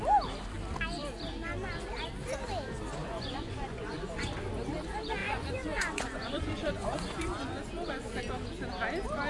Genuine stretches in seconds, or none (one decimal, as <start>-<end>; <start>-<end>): 0.0-3.0; 4.3-5.2; 8.2-9.3